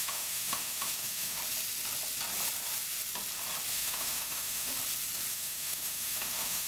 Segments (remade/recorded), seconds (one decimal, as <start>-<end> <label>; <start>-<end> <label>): 0.0-1.4 remade; 1.4-3.7 recorded; 3.7-4.7 remade; 4.7-5.3 recorded; 5.3-6.7 remade